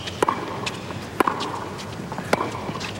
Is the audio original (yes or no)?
yes